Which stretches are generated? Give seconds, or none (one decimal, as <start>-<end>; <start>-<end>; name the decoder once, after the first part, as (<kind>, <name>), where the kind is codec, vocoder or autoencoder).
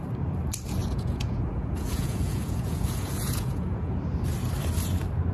0.8-4.0 (vocoder, Vocos)